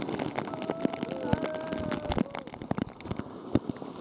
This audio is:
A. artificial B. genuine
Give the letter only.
B